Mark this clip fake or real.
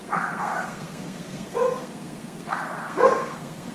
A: fake